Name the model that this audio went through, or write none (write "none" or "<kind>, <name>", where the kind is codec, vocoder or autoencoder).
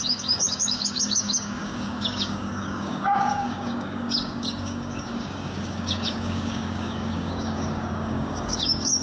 codec, DAC